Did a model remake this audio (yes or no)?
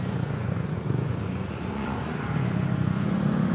yes